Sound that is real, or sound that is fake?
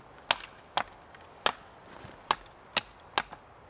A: real